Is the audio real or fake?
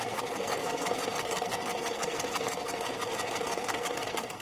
fake